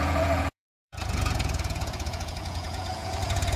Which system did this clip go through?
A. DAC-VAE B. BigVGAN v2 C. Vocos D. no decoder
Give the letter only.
C